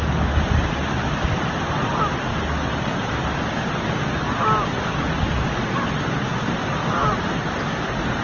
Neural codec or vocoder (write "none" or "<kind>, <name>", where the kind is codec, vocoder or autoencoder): none